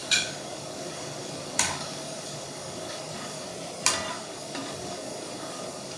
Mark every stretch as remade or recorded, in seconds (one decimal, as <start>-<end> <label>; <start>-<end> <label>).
0.0-3.5 remade; 3.5-4.1 recorded; 4.1-6.0 remade